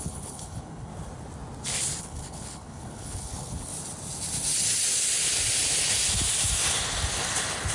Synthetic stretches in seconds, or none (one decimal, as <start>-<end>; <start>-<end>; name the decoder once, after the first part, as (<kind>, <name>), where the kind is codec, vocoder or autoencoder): 0.0-0.9 (codec, HILCodec); 2.0-3.7